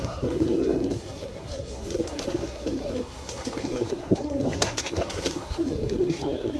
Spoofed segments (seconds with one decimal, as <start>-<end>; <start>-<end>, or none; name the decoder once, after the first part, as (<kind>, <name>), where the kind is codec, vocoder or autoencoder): 0.0-6.6 (codec, SNAC)